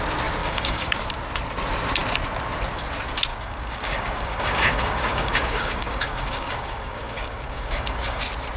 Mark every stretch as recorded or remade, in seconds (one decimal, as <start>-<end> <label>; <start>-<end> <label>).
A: 0.0-0.4 recorded; 0.4-1.0 remade; 1.0-3.3 recorded; 3.3-8.2 remade; 8.2-8.6 recorded